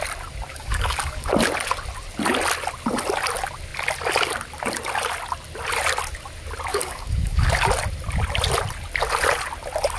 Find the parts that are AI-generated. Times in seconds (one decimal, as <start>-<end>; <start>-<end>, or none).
0.5-1.3; 6.7-7.5